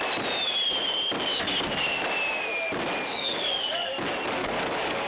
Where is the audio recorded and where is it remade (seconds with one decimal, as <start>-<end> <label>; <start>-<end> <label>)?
0.0-3.1 recorded; 3.1-3.9 remade; 3.9-4.4 recorded; 4.4-5.1 remade